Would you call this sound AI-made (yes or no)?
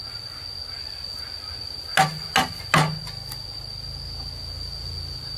no